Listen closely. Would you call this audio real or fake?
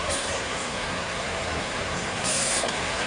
fake